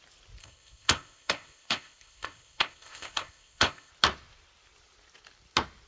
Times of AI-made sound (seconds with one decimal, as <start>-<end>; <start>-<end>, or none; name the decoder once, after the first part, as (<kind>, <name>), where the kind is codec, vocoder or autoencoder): 0.4-3.9 (codec, ZipCodec)